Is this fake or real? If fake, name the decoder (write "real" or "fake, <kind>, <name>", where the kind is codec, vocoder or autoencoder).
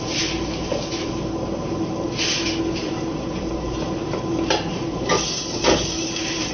real